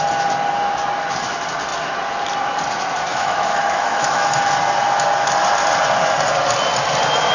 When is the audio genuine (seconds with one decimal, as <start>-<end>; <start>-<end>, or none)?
0.0-3.1; 4.4-7.3